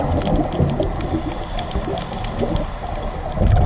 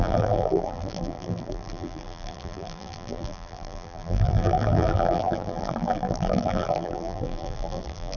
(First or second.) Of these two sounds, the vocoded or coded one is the second